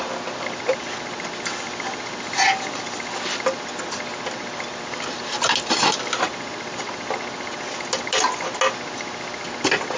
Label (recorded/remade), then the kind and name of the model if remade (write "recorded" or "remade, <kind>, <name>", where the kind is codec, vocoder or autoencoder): recorded